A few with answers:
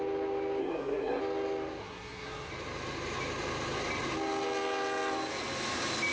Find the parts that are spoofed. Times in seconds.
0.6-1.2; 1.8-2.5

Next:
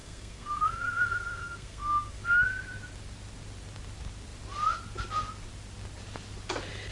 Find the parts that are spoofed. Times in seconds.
0.0-2.2